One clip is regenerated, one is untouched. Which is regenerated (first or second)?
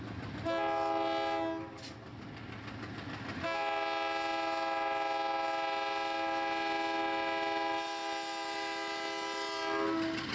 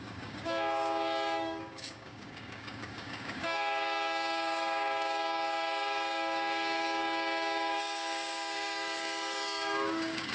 second